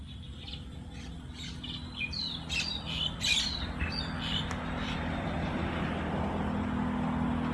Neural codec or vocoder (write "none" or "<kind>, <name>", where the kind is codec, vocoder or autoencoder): none